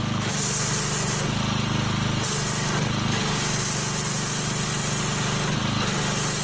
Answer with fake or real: real